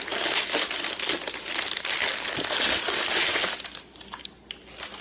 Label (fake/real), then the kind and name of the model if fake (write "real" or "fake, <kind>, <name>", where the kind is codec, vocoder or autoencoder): real